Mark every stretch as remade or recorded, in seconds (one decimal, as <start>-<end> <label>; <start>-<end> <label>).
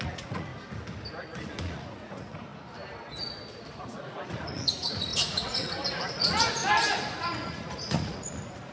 0.0-0.5 remade; 0.5-1.6 recorded; 1.6-2.5 remade; 2.5-3.7 recorded; 3.7-6.6 remade; 6.6-7.2 recorded; 7.2-8.7 remade